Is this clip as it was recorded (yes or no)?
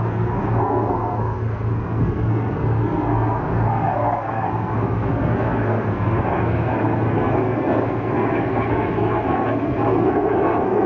no